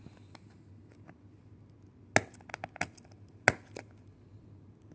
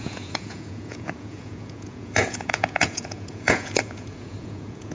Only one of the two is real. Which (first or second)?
first